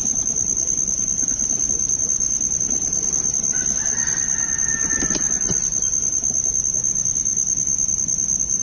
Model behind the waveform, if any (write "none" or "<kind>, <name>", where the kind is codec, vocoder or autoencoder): none